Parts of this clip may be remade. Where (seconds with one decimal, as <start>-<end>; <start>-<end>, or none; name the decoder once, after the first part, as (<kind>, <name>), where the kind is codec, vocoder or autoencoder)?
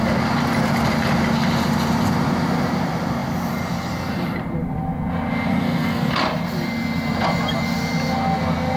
5.5-6.1 (codec, SNAC)